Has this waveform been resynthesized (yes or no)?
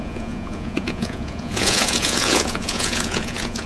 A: yes